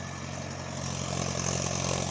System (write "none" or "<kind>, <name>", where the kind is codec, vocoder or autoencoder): none